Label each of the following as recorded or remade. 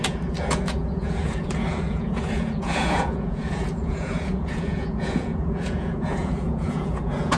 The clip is remade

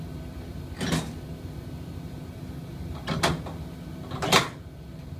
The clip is recorded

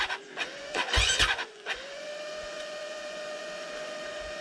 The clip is remade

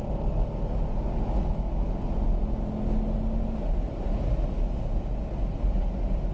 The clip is recorded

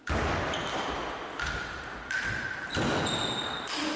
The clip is recorded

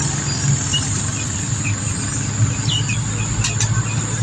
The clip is recorded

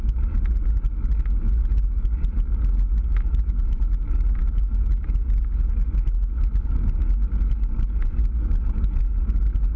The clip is recorded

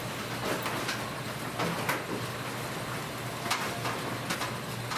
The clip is recorded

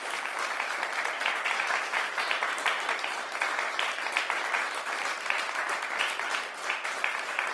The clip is remade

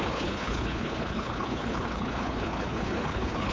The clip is remade